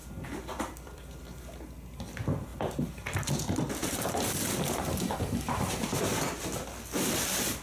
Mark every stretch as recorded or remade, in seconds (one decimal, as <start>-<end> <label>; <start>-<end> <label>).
0.0-1.2 remade; 1.2-2.5 recorded; 2.5-3.4 remade; 3.4-3.8 recorded; 3.8-6.4 remade; 6.4-7.6 recorded